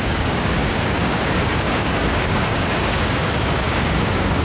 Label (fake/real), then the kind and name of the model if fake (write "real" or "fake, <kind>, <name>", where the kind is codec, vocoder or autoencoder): fake, codec, DAC